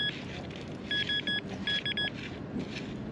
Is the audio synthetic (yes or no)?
no